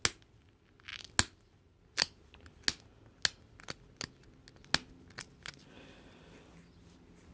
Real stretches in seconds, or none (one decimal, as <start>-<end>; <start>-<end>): 0.0-7.3